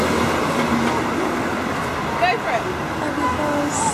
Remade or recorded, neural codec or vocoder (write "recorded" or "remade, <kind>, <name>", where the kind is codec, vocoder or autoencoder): recorded